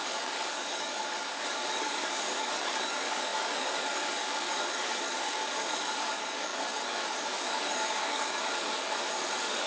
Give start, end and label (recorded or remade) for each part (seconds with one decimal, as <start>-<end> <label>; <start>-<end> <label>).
0.0-9.7 remade